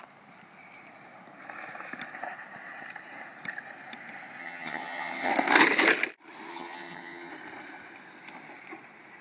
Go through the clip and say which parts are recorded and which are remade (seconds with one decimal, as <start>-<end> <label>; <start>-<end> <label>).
0.0-4.4 recorded; 4.4-5.3 remade; 5.3-6.5 recorded; 6.5-7.3 remade; 7.3-9.2 recorded